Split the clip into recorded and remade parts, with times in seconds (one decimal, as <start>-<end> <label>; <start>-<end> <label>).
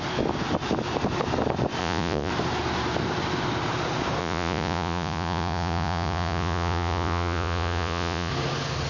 0.0-1.8 recorded; 1.8-2.3 remade; 2.3-4.2 recorded; 4.2-8.3 remade; 8.3-8.9 recorded